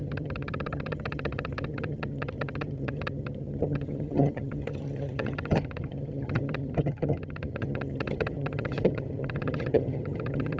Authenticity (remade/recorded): remade